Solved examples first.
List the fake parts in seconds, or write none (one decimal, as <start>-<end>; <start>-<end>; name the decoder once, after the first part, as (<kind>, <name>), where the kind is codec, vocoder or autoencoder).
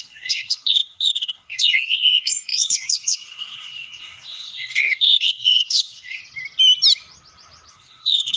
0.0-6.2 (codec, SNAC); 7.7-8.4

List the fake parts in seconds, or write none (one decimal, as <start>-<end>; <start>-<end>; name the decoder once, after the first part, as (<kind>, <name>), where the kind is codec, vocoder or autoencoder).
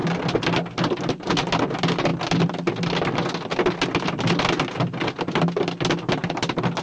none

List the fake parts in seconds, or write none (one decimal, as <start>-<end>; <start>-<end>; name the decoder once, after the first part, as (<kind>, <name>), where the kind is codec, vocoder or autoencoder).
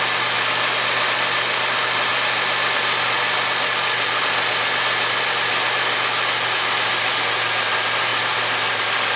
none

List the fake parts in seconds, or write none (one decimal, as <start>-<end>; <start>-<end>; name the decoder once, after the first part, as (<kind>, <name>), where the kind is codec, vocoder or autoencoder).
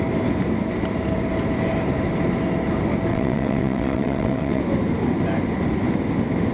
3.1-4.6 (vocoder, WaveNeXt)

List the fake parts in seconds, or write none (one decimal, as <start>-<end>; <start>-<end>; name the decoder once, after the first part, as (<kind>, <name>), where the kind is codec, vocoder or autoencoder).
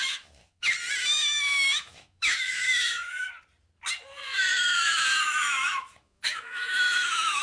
0.0-0.7 (autoencoder, DAC-VAE); 1.1-3.3; 4.5-7.4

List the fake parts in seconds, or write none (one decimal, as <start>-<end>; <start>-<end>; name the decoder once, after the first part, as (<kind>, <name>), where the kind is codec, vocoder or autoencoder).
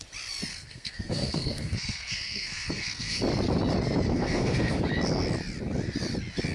0.5-3.2 (codec, SNAC); 4.1-4.8